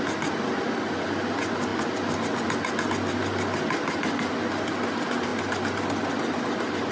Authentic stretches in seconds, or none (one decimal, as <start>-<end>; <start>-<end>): 0.0-6.9